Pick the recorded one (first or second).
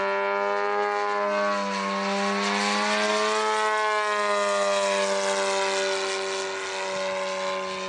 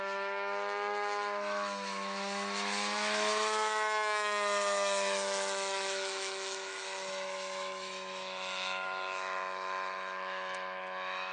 first